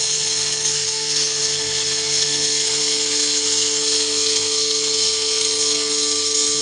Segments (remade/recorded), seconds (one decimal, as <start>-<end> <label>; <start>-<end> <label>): 0.0-6.6 remade